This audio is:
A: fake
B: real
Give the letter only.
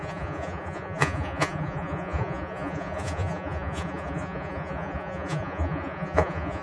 A